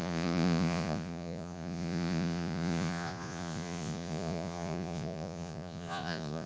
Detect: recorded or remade remade